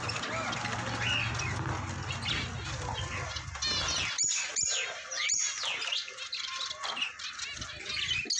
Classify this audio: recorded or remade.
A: recorded